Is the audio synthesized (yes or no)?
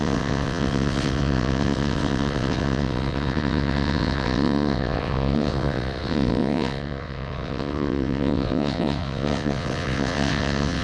yes